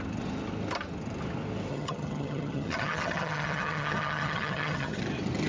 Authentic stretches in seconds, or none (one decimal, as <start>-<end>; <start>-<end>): 0.0-1.7; 5.0-5.5